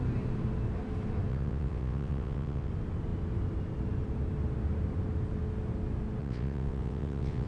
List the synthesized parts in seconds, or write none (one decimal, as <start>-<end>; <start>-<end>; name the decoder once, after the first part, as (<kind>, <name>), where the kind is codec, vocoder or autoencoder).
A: 1.3-2.7 (vocoder, WaveNeXt); 6.2-7.5